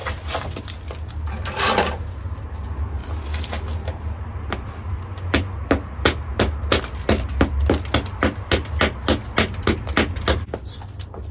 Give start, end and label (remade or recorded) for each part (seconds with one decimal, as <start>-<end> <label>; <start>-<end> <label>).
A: 0.0-11.3 recorded